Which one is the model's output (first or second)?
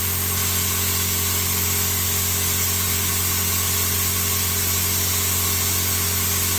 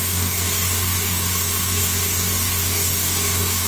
second